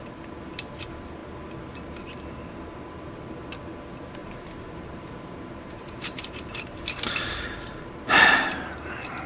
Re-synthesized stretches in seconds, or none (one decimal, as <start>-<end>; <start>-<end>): 4.2-8.5